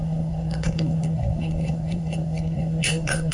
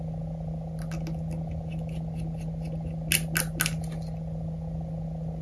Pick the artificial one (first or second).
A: first